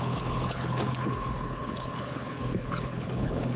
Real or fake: fake